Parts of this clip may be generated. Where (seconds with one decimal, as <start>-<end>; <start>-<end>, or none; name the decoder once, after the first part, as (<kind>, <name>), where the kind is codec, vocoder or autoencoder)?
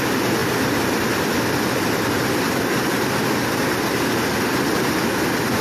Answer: 0.4-3.8 (vocoder, BigVGAN v2)